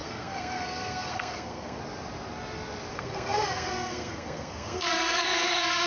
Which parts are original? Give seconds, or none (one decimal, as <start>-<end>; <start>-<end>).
1.8-2.9